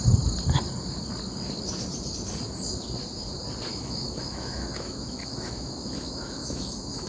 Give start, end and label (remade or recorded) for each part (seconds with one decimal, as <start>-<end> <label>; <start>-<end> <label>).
0.0-3.7 recorded; 3.7-7.1 remade